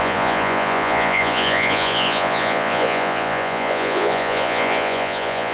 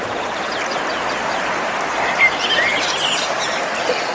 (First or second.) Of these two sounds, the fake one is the first